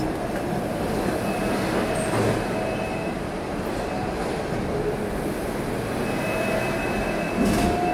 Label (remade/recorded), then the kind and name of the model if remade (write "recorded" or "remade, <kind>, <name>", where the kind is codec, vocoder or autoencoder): recorded